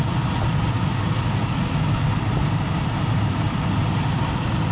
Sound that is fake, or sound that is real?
real